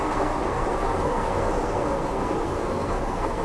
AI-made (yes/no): yes